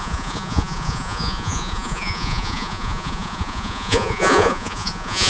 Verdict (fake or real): fake